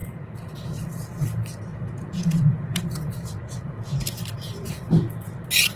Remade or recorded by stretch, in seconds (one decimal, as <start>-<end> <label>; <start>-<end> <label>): 0.0-0.5 remade; 0.5-1.7 recorded; 1.7-4.2 remade; 4.2-5.8 recorded

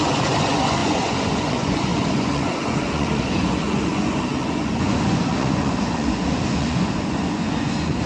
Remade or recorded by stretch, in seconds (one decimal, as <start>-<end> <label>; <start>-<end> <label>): 0.0-8.1 remade

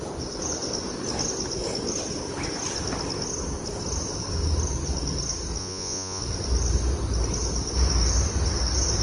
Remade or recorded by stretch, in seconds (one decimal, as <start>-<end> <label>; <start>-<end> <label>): 0.0-5.6 recorded; 5.6-6.2 remade; 6.2-9.0 recorded

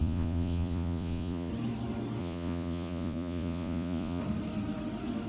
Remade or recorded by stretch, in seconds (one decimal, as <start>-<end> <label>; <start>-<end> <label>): 0.0-1.5 remade; 1.5-2.2 recorded; 2.2-4.2 remade; 4.2-5.3 recorded

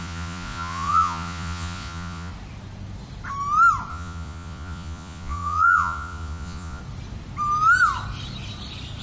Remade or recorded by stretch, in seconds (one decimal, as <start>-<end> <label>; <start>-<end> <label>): 0.0-2.3 remade; 2.3-3.9 recorded; 3.9-6.8 remade; 6.8-9.0 recorded